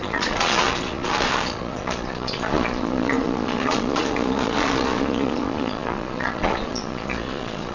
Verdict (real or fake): fake